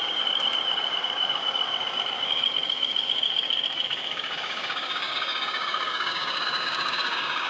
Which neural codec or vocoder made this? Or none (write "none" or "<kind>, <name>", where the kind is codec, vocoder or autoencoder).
codec, DAC